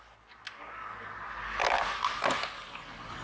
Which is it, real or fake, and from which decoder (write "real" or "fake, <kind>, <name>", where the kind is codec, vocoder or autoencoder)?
real